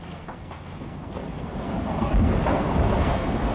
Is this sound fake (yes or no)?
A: yes